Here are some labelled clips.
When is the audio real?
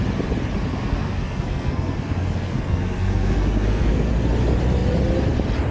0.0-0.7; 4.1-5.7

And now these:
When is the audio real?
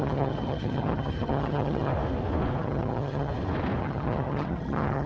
1.9-2.6; 3.3-3.8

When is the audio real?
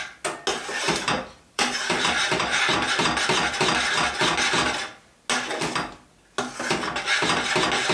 0.0-0.5; 2.9-7.9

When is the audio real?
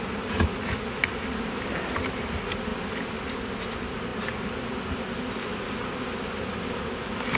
0.0-7.4